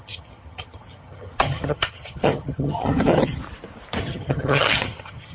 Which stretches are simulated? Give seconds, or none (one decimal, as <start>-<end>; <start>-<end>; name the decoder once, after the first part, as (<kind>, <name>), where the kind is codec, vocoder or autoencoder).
0.0-3.4 (vocoder, HiFi-GAN); 4.0-5.3